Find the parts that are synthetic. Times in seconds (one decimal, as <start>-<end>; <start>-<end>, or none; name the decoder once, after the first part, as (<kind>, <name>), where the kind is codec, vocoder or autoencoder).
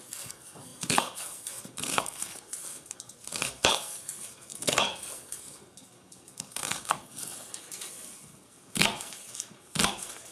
0.0-10.3 (codec, SNAC)